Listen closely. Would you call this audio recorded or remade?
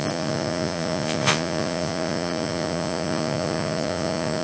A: remade